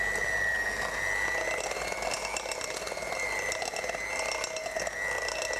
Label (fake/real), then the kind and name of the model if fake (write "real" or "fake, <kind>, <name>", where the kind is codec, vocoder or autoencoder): real